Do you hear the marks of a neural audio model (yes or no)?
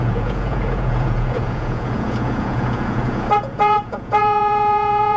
yes